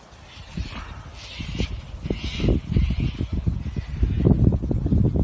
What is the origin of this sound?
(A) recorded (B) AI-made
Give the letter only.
A